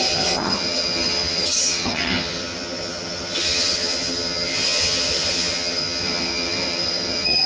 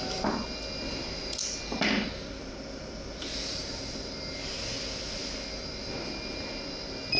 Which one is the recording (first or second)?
second